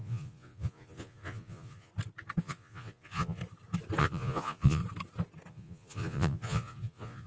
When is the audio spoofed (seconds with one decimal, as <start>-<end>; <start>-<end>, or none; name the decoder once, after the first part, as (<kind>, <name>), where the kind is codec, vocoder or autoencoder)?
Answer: 0.0-1.9 (vocoder, Vocos); 2.4-3.4; 4.0-4.8; 5.5-7.3